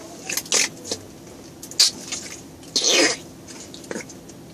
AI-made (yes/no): no